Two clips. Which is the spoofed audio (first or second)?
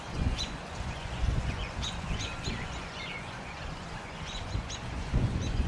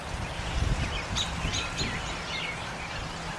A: first